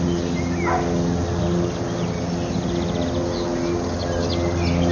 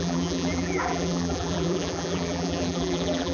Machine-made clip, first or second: second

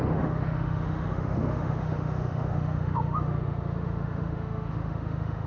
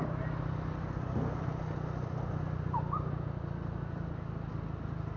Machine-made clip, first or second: first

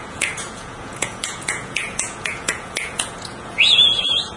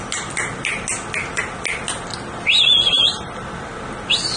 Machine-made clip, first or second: first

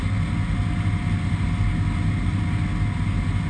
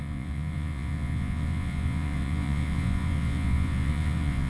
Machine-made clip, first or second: second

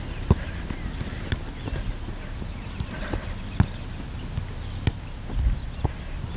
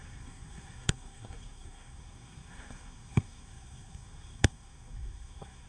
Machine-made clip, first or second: second